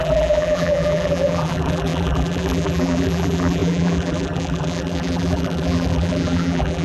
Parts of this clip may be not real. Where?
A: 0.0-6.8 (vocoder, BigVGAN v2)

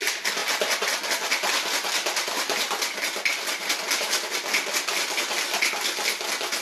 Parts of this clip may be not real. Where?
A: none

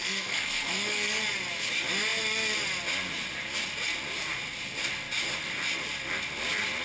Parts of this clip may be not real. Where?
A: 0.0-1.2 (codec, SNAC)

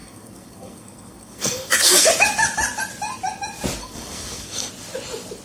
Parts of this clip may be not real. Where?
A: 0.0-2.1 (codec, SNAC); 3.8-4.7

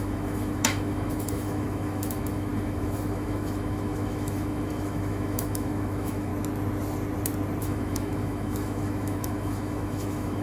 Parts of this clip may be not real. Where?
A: 0.0-6.3 (autoencoder, DAC-VAE); 7.6-10.4